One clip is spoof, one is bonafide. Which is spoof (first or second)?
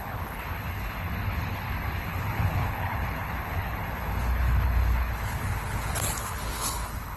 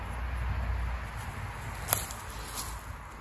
first